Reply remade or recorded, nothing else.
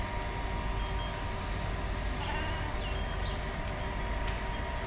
recorded